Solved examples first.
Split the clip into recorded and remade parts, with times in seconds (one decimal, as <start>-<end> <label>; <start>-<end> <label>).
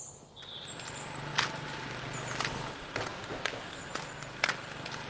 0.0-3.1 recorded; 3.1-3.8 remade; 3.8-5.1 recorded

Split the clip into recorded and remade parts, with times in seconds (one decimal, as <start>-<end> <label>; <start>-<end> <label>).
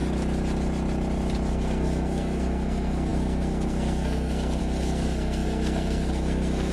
0.0-1.5 recorded; 1.5-6.7 remade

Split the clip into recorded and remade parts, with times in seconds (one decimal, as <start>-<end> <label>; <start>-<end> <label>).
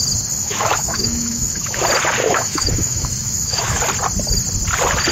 0.0-0.4 recorded; 0.4-1.8 remade; 1.8-2.2 recorded; 2.2-3.8 remade; 3.8-5.1 recorded